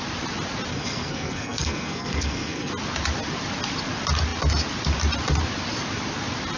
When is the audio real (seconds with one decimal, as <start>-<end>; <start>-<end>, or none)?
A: 0.0-0.7; 2.7-6.6